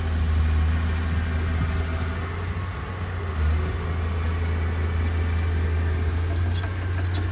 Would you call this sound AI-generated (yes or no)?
no